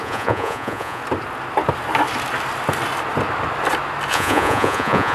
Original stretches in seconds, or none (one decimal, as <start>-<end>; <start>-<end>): 1.0-4.1